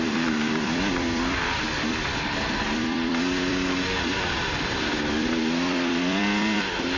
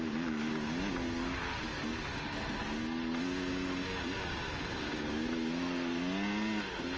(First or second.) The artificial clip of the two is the first